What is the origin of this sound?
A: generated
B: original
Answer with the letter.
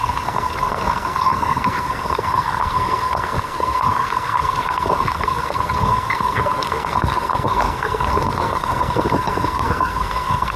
A